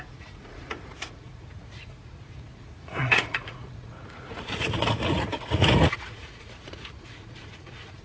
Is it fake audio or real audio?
fake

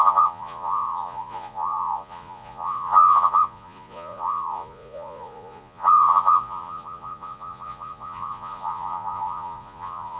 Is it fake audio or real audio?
fake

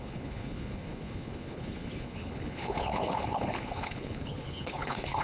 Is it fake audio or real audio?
fake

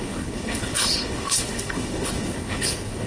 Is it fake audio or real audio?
fake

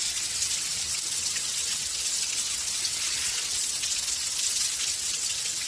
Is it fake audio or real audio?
fake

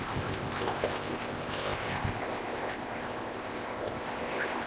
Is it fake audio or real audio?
fake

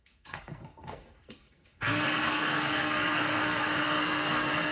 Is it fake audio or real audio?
fake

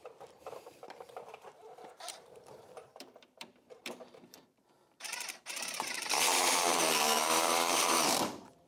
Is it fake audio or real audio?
fake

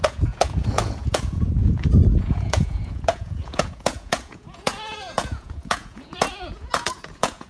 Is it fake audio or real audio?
fake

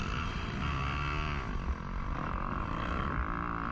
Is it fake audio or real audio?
real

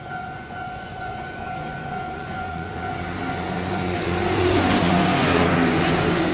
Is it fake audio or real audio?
fake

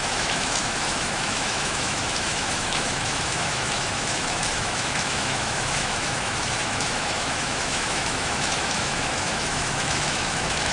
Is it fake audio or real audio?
fake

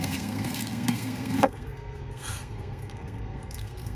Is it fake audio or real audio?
fake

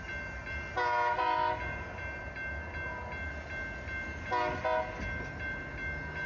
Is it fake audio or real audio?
real